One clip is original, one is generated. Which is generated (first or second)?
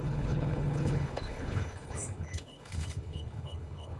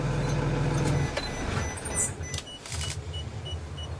first